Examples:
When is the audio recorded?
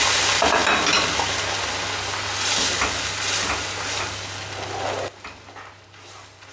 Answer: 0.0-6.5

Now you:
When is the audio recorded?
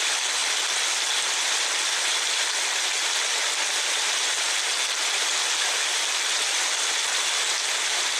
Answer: 0.0-8.2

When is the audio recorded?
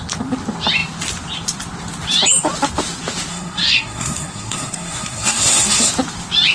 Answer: 0.0-3.3; 5.9-6.5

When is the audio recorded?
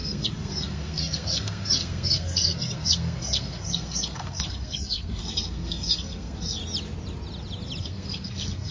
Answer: 6.6-7.8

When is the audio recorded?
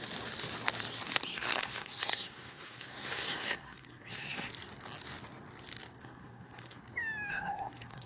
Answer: 0.0-1.3; 4.5-6.0; 6.8-7.3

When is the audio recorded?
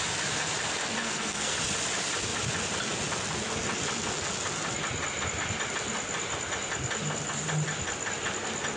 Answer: 0.0-1.0; 1.6-8.8